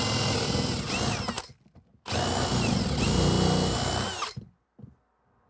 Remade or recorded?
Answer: recorded